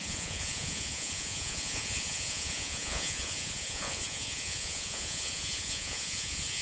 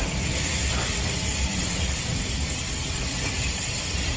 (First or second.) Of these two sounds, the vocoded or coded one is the first